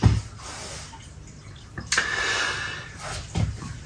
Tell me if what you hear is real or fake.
real